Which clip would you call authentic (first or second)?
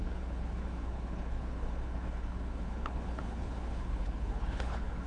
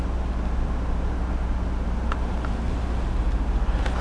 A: second